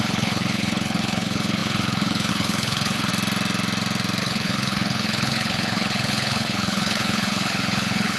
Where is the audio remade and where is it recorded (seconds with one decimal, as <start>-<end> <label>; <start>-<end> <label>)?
0.0-3.1 remade; 3.1-4.2 recorded; 4.2-8.2 remade